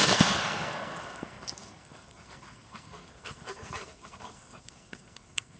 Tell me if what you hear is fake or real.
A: fake